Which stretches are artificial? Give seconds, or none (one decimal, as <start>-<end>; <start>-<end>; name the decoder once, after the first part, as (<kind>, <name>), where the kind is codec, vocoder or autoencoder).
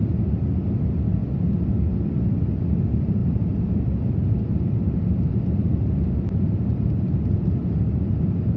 none